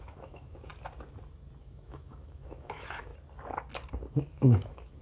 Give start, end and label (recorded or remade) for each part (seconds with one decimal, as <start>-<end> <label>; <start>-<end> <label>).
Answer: 0.0-0.7 remade; 0.7-1.6 recorded; 1.6-3.1 remade; 3.1-4.1 recorded; 4.1-5.0 remade

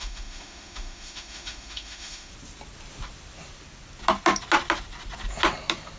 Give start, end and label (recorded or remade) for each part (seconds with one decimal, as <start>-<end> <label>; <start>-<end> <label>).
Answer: 0.0-2.3 remade; 2.3-6.0 recorded

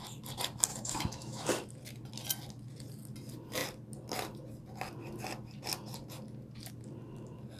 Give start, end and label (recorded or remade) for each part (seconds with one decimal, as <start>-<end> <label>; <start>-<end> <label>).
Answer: 0.0-0.7 recorded; 0.7-1.5 remade; 1.5-7.6 recorded